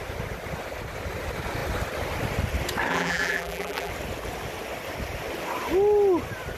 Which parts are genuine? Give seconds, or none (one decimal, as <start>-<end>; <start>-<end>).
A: 0.0-2.9; 3.9-6.6